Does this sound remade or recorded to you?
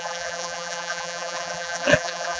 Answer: remade